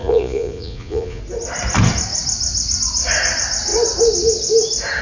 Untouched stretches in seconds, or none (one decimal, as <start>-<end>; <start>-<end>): 1.2-5.0